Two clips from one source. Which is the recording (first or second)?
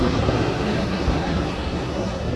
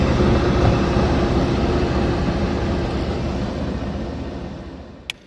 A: second